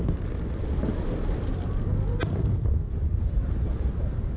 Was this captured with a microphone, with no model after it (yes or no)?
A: yes